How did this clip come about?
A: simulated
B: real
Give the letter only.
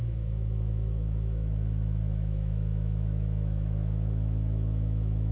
A